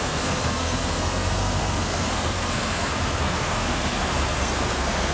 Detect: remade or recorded remade